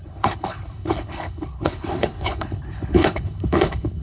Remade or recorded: remade